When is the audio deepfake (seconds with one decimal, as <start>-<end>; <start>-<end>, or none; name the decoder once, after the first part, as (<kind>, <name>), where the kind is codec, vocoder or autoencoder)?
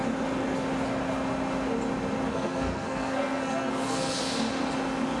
2.3-4.2 (codec, SNAC)